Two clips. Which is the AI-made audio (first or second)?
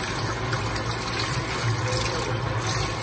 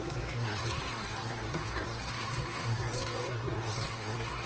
second